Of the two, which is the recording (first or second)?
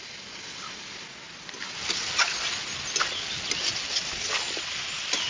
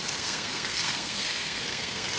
first